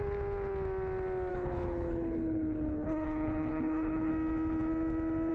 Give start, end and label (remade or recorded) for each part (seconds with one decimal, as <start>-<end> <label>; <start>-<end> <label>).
0.0-1.3 recorded; 1.3-4.1 remade; 4.1-5.3 recorded